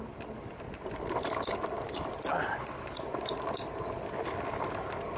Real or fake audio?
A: real